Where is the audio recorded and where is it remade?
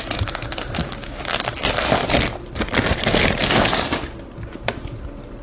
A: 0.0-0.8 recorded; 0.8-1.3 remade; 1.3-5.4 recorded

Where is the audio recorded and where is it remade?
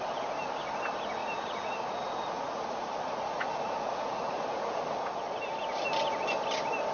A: 0.0-1.2 recorded; 1.2-4.8 remade; 4.8-6.9 recorded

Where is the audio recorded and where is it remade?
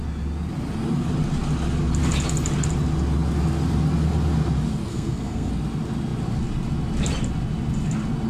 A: 0.0-4.9 recorded; 4.9-5.5 remade; 5.5-8.3 recorded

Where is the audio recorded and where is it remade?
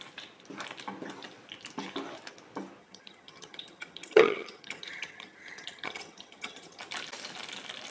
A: 0.0-2.8 recorded; 2.8-6.8 remade; 6.8-7.9 recorded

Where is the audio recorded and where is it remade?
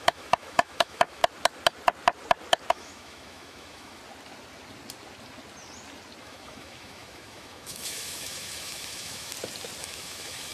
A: 0.0-1.2 remade; 1.2-2.7 recorded; 2.7-4.0 remade; 4.0-6.2 recorded; 6.2-9.3 remade; 9.3-9.8 recorded; 9.8-10.5 remade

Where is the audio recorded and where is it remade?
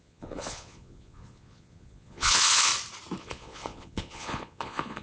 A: 0.0-2.7 remade; 2.7-3.2 recorded; 3.2-5.0 remade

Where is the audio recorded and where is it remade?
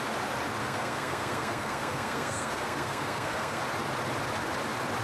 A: 0.0-0.6 recorded; 0.6-3.6 remade; 3.6-5.0 recorded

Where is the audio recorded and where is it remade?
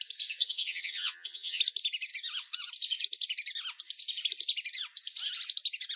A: 0.0-0.4 recorded; 0.4-1.6 remade; 1.6-6.0 recorded